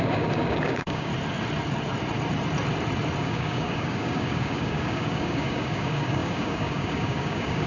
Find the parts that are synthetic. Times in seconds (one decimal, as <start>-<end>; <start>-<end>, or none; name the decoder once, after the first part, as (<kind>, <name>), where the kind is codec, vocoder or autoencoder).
0.0-1.1 (codec, DAC); 3.2-7.7